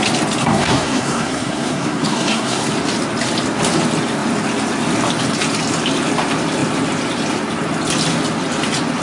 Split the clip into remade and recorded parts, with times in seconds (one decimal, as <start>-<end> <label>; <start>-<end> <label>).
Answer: 0.0-0.4 recorded; 0.4-2.7 remade; 2.7-9.0 recorded